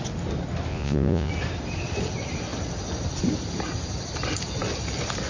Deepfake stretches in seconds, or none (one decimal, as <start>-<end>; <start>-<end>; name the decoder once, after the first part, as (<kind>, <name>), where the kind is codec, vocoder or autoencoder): 0.7-1.3 (vocoder, Vocos)